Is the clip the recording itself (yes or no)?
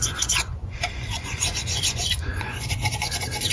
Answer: no